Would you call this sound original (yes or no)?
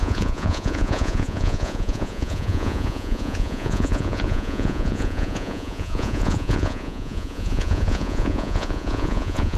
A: no